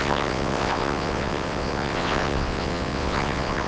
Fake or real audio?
fake